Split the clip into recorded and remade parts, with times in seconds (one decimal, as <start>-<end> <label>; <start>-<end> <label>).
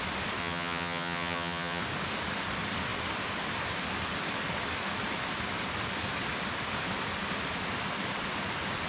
0.0-0.4 recorded; 0.4-1.8 remade; 1.8-8.9 recorded